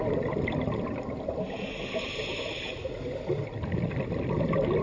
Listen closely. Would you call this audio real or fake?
real